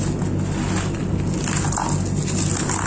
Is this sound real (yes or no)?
yes